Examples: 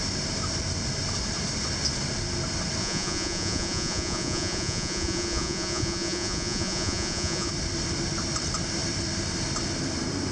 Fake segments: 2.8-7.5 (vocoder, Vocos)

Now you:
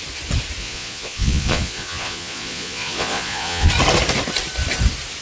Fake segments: 0.6-3.7 (vocoder, Vocos)